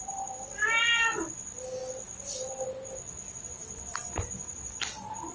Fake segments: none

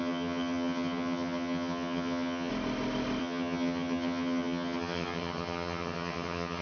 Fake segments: 0.0-2.5; 3.2-6.6

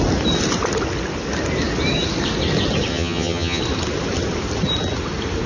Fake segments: 2.9-3.6

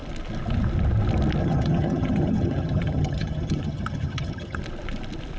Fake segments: 1.4-4.6

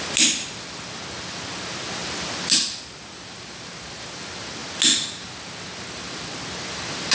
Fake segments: none

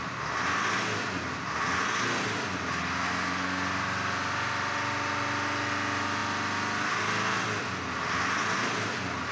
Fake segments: none

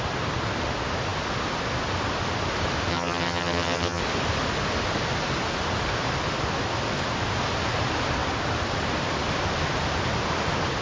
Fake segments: 2.9-4.0

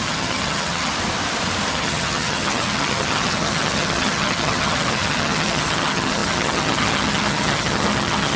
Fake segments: 0.0-0.9; 1.7-8.4